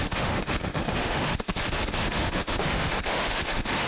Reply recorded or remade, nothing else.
remade